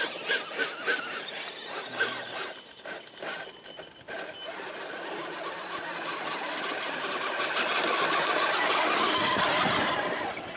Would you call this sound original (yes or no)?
yes